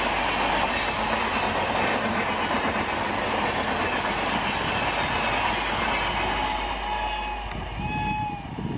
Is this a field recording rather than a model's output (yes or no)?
yes